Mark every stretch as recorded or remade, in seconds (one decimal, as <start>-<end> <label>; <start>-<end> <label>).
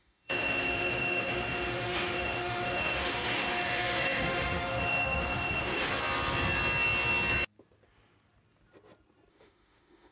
0.0-5.9 remade; 5.9-9.3 recorded; 9.3-10.1 remade